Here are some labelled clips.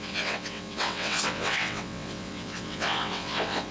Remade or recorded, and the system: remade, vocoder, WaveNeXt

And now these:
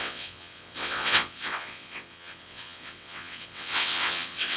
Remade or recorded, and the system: remade, vocoder, WaveNeXt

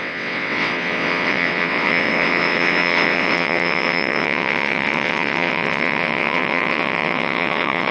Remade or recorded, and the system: remade, vocoder, WaveNeXt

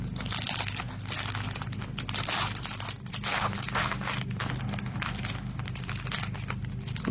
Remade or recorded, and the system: recorded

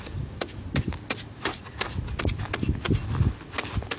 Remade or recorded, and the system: recorded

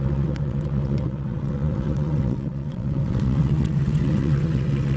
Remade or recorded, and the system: remade, vocoder, WaveNeXt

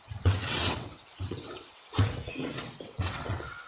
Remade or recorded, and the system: remade, vocoder, WaveNeXt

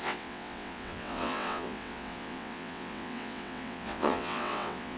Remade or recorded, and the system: remade, vocoder, WaveNeXt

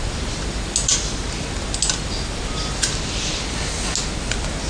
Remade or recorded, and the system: recorded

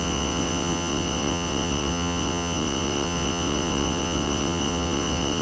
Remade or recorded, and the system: remade, vocoder, WaveNeXt